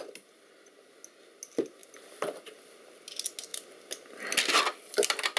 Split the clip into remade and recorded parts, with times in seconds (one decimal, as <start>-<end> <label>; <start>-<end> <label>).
0.0-5.4 recorded